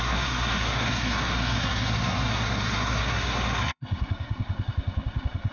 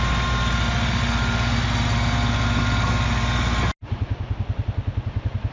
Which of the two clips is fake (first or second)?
first